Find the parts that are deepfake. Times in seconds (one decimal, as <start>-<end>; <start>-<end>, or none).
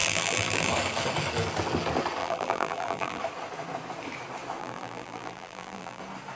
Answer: 0.0-0.7; 2.2-3.2; 4.6-6.0